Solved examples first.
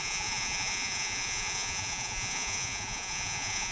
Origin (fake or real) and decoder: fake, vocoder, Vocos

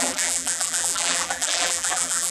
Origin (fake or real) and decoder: fake, vocoder, BigVGAN v2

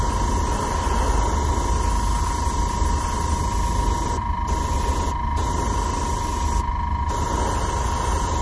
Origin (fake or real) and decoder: real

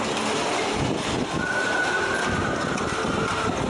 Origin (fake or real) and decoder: real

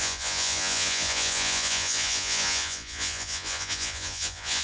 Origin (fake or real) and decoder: fake, vocoder, Vocos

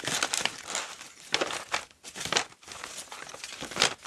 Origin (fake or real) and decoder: real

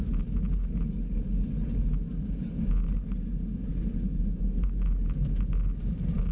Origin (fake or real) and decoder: real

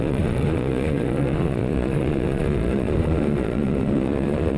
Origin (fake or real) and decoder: fake, vocoder, Vocos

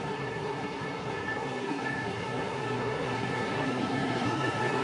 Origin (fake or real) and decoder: fake, codec, SNAC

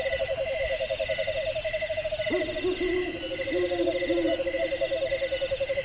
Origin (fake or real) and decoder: real